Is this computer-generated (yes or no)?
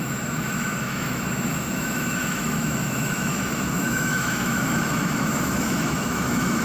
yes